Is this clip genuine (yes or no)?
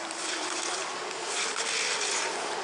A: yes